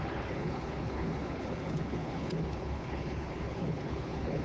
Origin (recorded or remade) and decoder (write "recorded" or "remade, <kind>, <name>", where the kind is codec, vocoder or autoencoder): remade, codec, HILCodec